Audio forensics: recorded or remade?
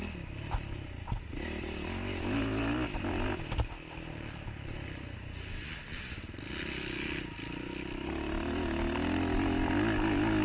recorded